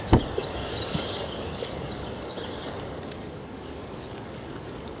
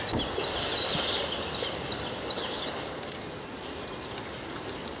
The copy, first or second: first